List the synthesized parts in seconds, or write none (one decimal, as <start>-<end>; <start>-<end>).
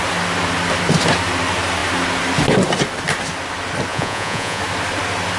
3.9-4.6